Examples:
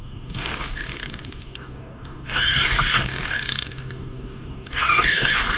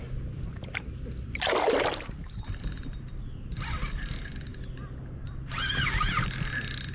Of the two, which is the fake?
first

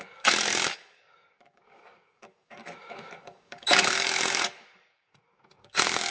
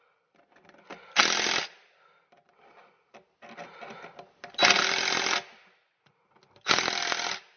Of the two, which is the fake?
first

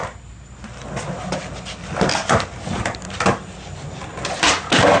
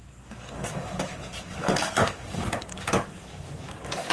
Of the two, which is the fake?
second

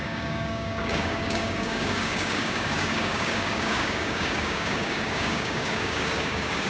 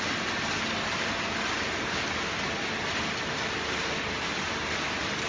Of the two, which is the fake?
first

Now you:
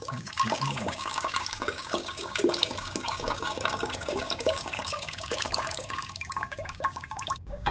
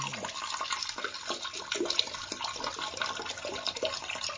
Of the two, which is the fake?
first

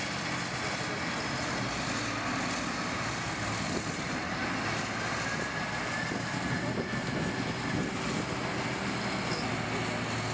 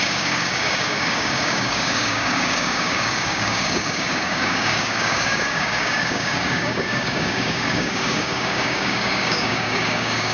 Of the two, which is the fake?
second